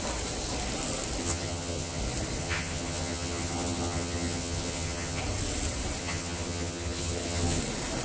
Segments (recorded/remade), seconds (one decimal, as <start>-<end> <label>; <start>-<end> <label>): 0.0-1.2 recorded; 1.2-2.0 remade; 2.0-2.4 recorded; 2.4-5.2 remade; 5.2-6.0 recorded; 6.0-7.6 remade; 7.6-8.0 recorded